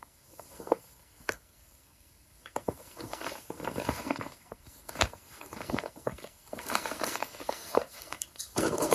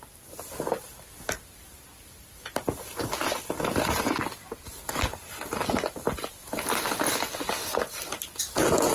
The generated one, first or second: first